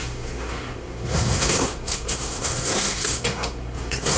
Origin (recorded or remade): remade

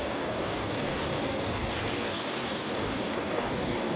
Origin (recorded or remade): remade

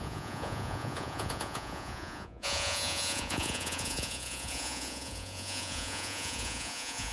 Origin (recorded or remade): remade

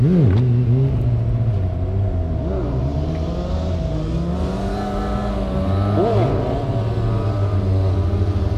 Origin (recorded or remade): recorded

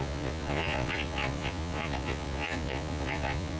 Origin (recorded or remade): remade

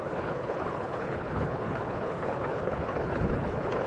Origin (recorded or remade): remade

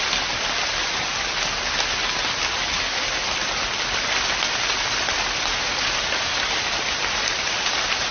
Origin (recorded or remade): recorded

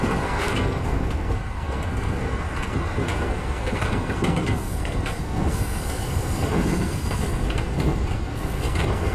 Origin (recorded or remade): remade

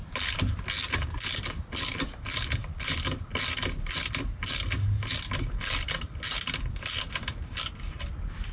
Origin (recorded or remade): recorded